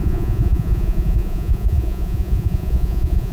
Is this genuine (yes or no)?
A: no